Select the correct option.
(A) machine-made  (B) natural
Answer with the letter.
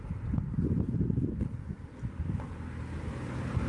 B